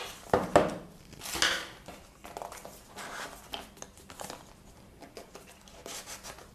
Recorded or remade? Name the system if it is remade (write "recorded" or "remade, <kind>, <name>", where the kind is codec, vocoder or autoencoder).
recorded